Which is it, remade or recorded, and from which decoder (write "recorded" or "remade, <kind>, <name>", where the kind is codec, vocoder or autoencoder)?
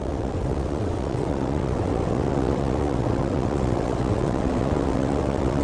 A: remade, vocoder, WaveNeXt